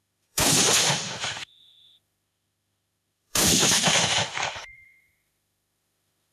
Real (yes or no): no